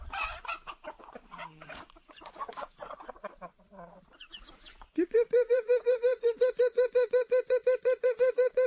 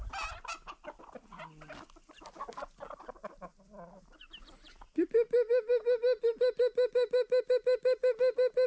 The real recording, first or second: second